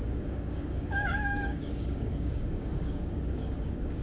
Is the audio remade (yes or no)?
yes